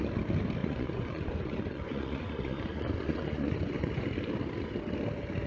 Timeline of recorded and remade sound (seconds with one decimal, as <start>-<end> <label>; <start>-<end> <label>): 0.0-0.6 recorded; 0.6-3.9 remade; 3.9-5.5 recorded